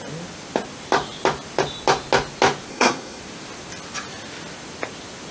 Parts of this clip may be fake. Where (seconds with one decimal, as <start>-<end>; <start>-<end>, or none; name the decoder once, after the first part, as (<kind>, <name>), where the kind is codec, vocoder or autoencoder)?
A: 2.7-3.2 (codec, SNAC)